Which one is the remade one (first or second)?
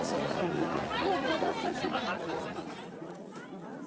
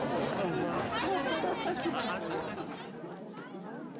first